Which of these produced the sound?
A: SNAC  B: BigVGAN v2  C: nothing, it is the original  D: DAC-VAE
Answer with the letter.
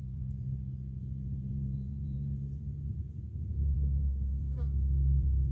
B